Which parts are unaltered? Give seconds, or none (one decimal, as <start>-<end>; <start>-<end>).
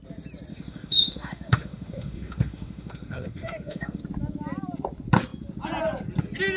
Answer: 0.0-0.5; 4.0-6.6